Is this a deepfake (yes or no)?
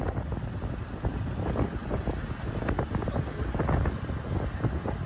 no